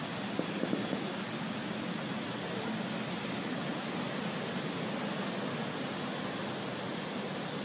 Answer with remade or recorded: recorded